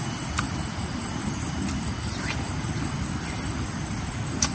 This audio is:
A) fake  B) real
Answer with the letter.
B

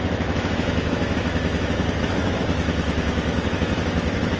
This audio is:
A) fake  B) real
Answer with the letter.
A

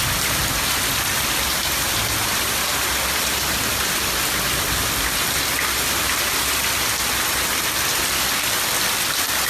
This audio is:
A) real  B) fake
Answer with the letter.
A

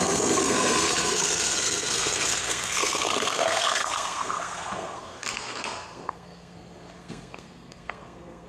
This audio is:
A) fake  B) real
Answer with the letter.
A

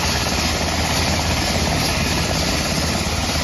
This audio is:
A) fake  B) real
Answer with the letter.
B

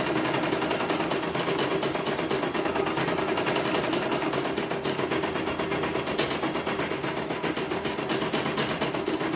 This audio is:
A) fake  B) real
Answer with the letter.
B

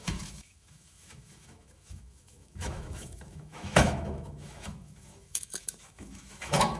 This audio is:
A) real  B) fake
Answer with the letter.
B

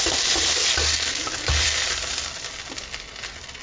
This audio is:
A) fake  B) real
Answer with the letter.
B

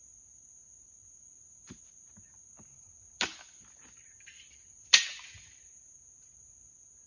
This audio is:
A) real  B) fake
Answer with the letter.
A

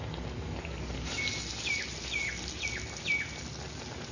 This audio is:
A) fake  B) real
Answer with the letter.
B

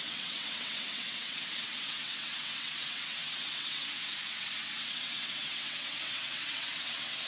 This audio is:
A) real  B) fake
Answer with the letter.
B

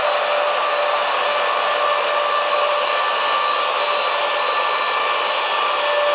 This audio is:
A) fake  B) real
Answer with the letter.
B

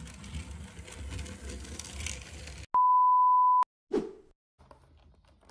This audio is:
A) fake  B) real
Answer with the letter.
B